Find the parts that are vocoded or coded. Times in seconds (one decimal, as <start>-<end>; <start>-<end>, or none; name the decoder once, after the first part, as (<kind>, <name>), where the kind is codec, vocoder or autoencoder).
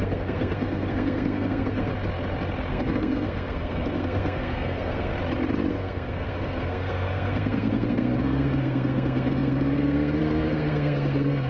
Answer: 0.0-1.9 (codec, SNAC); 2.7-5.1; 5.7-11.5